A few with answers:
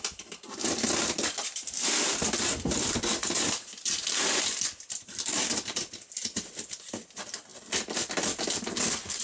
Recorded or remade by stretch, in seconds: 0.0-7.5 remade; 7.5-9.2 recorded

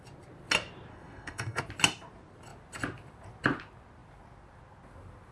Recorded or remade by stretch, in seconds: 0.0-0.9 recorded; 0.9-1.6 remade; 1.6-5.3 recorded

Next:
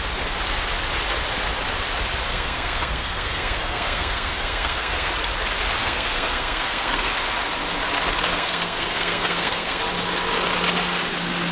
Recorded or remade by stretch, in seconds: 0.0-2.3 recorded; 2.3-5.1 remade; 5.1-5.8 recorded; 5.8-7.1 remade; 7.1-8.3 recorded; 8.3-9.8 remade; 9.8-11.5 recorded

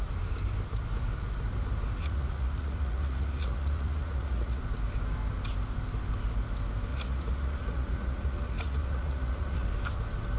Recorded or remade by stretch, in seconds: 0.0-2.0 recorded; 2.0-4.6 remade; 4.6-6.9 recorded; 6.9-9.7 remade; 9.7-10.4 recorded

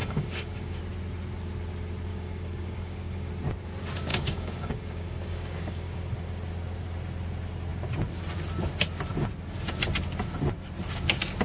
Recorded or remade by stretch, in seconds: 0.0-0.8 remade; 0.8-2.1 recorded; 2.1-3.3 remade; 3.3-4.1 recorded; 4.1-6.0 remade; 6.0-11.4 recorded

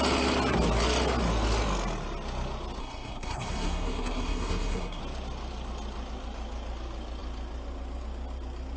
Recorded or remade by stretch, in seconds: 0.0-2.8 recorded; 2.8-5.0 remade; 5.0-8.8 recorded

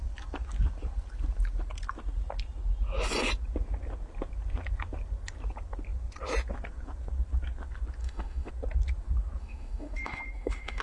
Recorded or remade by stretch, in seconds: 0.0-8.0 recorded; 8.0-8.5 remade; 8.5-9.4 recorded; 9.4-10.8 remade